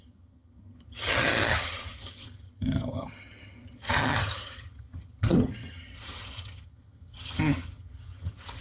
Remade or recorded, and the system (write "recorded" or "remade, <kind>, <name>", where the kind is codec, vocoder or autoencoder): remade, vocoder, HiFi-GAN